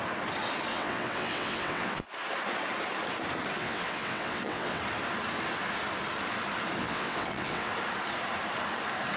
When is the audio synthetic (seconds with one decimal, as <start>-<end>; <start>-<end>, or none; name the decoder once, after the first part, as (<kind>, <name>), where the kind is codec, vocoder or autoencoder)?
0.7-1.9 (vocoder, WaveNeXt); 3.6-4.8; 6.8-7.7